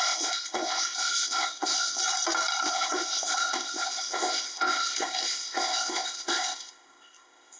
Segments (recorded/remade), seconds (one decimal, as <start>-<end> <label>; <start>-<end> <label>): 0.0-2.0 remade; 2.0-2.6 recorded; 2.6-7.6 remade